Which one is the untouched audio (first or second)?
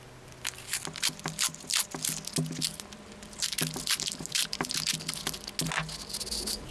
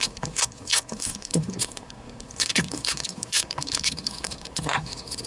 first